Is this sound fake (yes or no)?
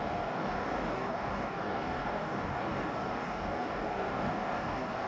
yes